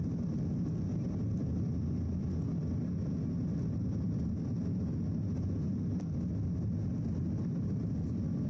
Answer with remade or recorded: recorded